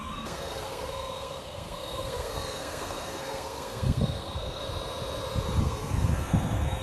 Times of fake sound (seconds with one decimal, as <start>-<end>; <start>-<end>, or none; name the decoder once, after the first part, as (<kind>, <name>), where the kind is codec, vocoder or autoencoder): 0.0-4.6 (codec, SNAC); 5.6-6.8